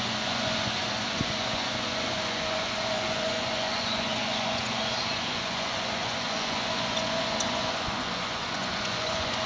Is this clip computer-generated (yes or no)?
yes